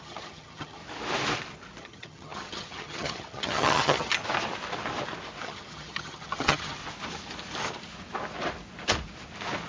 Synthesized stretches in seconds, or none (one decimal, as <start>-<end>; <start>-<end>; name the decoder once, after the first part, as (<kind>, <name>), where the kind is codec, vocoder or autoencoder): 0.0-0.8 (vocoder, HiFi-GAN); 1.8-4.1; 5.4-6.8